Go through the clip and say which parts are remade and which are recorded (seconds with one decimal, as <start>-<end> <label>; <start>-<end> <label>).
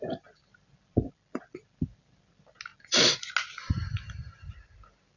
0.0-5.2 recorded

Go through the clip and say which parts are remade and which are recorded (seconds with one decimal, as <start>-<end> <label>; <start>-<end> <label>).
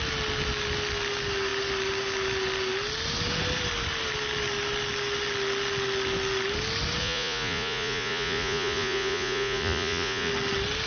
0.0-7.0 recorded; 7.0-10.3 remade; 10.3-10.9 recorded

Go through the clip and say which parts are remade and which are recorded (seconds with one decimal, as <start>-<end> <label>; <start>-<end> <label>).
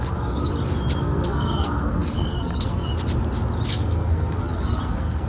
0.0-0.5 remade; 0.5-1.0 recorded; 1.0-2.9 remade; 2.9-3.7 recorded; 3.7-5.3 remade